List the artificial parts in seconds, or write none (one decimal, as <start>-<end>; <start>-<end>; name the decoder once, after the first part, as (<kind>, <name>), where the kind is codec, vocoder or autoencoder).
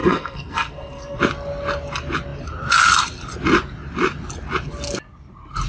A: 0.0-1.2 (codec, SNAC)